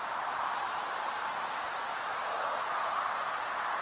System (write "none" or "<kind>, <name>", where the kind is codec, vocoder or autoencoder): vocoder, BigVGAN v2